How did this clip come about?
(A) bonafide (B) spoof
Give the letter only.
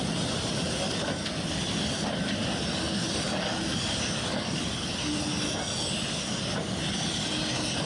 A